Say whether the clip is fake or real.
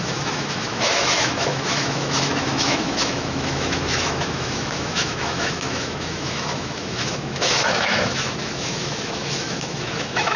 fake